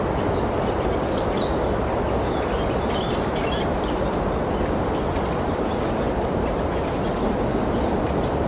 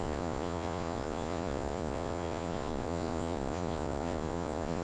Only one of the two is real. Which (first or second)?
first